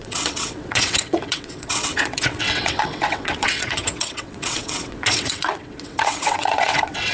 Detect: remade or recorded remade